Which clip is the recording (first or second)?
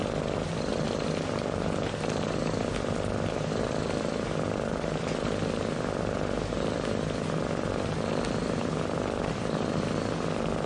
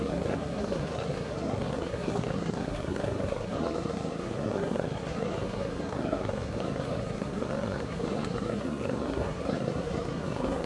first